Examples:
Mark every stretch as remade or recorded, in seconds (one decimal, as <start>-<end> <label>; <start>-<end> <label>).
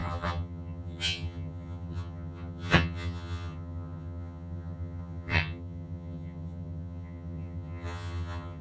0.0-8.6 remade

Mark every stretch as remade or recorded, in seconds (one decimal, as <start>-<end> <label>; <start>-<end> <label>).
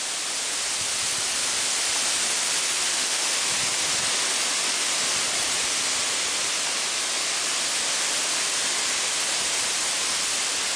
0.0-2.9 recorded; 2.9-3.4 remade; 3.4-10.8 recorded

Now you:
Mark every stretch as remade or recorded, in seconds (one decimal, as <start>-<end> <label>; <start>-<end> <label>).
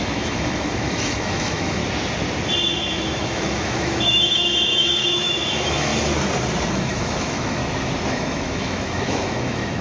0.0-1.8 remade; 1.8-2.7 recorded; 2.7-5.9 remade; 5.9-6.7 recorded; 6.7-7.6 remade; 7.6-8.1 recorded; 8.1-9.8 remade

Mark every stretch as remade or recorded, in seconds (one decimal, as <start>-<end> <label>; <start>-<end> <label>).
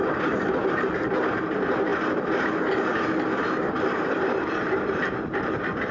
0.0-5.9 recorded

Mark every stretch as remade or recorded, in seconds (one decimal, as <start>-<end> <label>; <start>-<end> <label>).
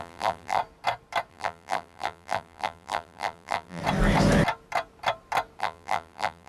0.0-0.6 remade; 0.6-1.3 recorded; 1.3-3.8 remade; 3.8-5.6 recorded; 5.6-6.5 remade